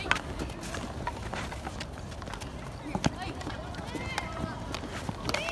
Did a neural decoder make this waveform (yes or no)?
no